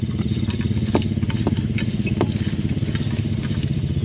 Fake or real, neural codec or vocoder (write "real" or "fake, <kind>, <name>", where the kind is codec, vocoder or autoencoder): real